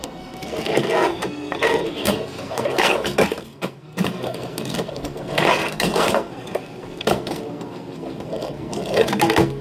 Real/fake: fake